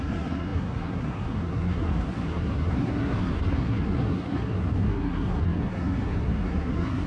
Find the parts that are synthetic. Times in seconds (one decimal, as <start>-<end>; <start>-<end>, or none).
0.0-7.1